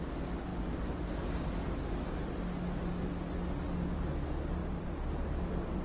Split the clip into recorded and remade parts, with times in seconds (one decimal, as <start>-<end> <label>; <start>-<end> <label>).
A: 0.0-4.6 recorded; 4.6-5.8 remade